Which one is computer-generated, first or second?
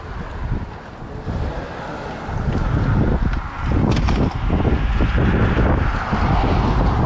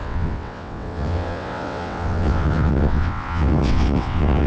second